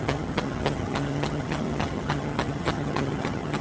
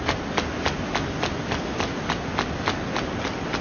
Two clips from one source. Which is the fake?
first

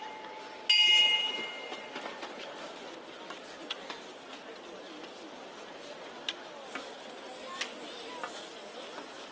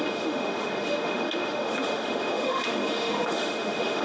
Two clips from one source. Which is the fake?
second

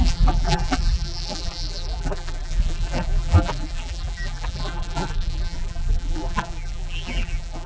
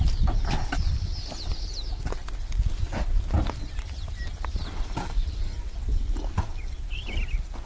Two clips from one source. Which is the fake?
first